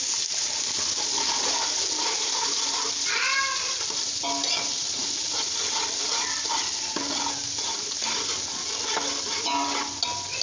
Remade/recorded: recorded